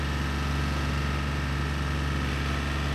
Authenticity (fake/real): real